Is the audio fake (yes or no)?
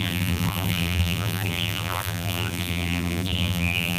yes